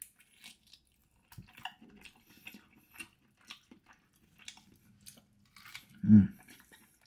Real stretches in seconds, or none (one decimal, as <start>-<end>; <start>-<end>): 0.0-7.1